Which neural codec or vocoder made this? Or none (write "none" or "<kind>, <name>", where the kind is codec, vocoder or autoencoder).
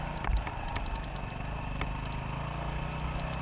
none